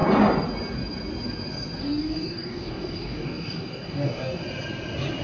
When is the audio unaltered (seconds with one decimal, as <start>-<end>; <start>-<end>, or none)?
0.0-1.8; 4.4-5.2